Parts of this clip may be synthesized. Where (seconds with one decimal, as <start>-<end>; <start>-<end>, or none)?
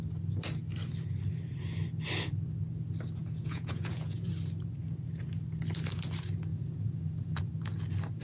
3.2-4.3; 6.5-7.4